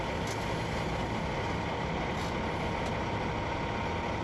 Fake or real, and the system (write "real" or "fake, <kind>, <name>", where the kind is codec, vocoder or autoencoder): real